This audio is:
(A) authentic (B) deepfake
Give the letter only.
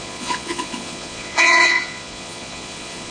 B